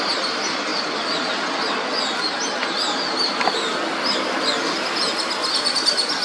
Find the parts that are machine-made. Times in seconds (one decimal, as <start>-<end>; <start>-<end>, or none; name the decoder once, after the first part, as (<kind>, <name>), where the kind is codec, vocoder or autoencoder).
none